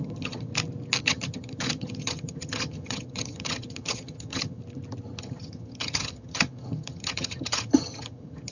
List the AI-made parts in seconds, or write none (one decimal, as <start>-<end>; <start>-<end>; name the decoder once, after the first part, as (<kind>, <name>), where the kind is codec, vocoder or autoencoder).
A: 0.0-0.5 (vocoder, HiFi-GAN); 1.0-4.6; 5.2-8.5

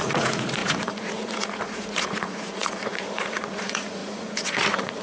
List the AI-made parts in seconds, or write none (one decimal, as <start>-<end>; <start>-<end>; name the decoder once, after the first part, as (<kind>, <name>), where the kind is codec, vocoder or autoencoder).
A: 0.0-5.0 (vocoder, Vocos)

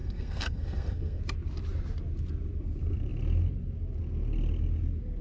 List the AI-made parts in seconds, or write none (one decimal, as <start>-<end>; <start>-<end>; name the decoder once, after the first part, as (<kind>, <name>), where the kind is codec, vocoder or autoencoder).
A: 0.0-1.2 (codec, SNAC)

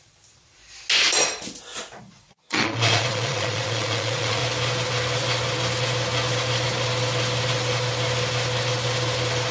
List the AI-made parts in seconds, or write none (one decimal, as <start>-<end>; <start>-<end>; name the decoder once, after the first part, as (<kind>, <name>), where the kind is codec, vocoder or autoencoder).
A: 0.0-0.6 (vocoder, Vocos); 2.0-4.4

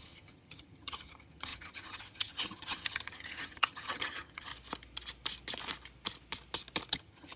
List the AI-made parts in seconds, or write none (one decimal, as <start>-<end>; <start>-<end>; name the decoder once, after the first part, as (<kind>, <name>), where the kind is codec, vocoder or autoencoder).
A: 0.0-4.5 (vocoder, HiFi-GAN); 6.9-7.4